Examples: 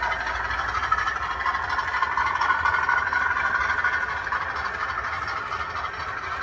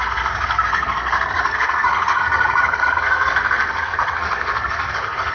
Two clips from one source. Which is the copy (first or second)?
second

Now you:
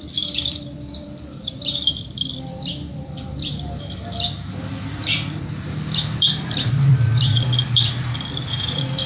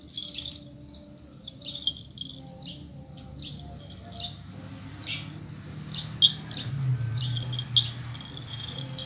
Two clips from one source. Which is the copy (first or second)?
first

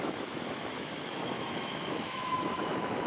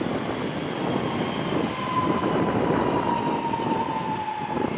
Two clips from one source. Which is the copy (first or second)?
first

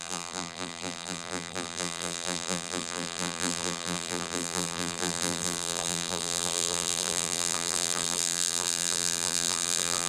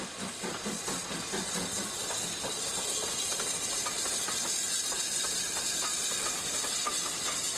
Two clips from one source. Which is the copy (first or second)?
first